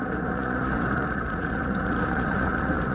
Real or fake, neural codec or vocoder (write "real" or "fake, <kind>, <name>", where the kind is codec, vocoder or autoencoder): fake, vocoder, Vocos